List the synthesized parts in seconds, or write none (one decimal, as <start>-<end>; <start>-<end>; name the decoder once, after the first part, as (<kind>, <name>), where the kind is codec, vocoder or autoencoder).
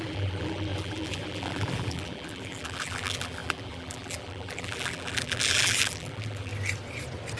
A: 0.0-6.5 (vocoder, BigVGAN v2)